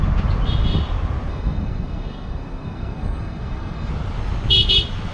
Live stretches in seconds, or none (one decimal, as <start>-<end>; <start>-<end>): 0.0-1.3; 3.9-5.1